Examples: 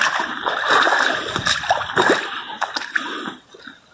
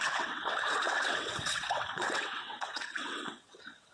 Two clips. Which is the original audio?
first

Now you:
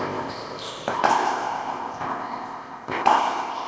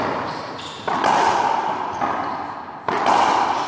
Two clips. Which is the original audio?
second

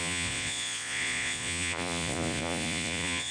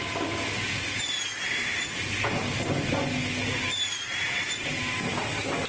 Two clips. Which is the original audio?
second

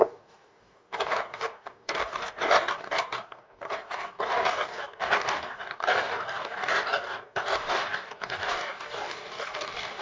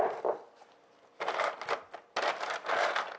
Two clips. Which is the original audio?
second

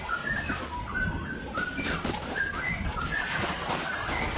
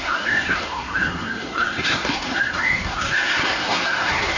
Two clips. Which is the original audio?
first